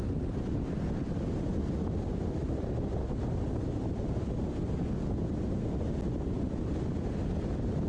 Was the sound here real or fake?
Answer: real